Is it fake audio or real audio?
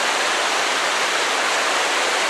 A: real